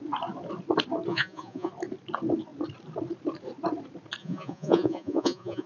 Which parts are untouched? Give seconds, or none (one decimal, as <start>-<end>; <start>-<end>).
0.0-1.1; 1.7-4.2